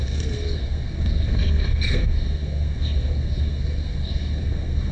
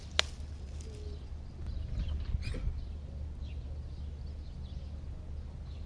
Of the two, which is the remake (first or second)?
first